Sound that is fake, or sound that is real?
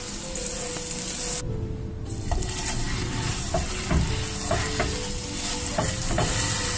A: real